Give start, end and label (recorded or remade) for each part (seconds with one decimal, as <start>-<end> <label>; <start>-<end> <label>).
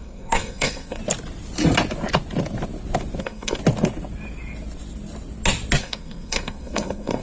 0.0-1.0 remade; 1.0-3.2 recorded; 3.2-3.6 remade; 3.6-5.8 recorded; 5.8-7.2 remade